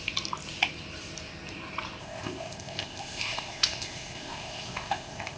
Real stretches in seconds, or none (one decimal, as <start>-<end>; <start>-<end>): 0.0-2.0